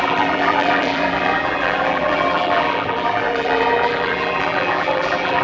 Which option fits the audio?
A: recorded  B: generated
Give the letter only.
B